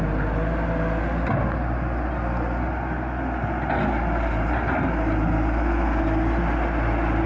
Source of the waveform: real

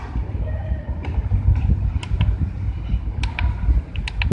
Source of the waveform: real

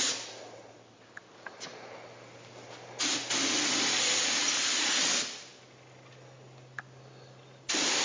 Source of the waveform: real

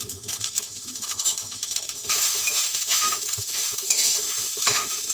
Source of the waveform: fake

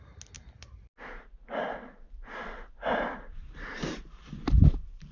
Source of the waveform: real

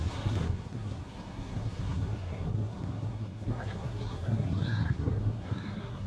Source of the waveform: fake